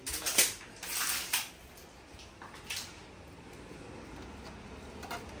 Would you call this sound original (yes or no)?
yes